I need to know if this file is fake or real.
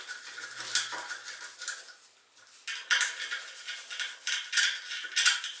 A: real